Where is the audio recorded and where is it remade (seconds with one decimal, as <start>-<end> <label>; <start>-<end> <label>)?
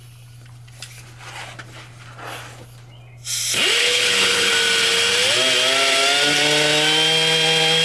0.0-3.8 recorded; 3.8-4.5 remade; 4.5-7.8 recorded